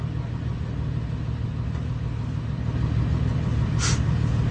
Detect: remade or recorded recorded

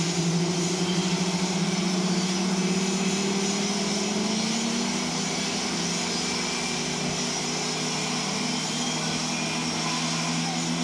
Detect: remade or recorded recorded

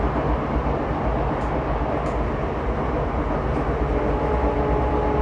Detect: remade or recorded recorded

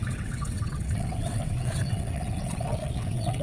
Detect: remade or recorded remade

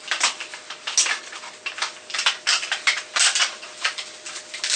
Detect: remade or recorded recorded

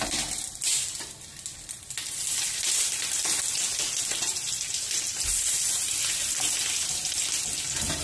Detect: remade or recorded recorded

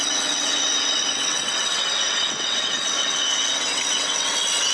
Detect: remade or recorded remade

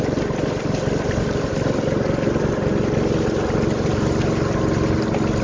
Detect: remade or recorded recorded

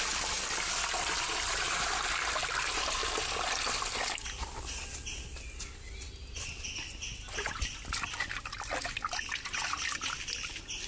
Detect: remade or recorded recorded